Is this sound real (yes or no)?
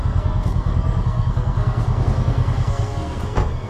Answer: no